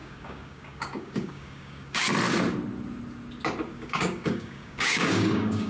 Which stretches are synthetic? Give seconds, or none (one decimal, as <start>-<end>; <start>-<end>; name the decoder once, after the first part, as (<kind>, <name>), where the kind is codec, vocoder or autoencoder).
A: 0.0-2.1 (codec, DAC); 3.7-5.7